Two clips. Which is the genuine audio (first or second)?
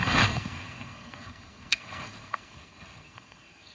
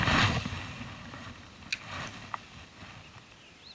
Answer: second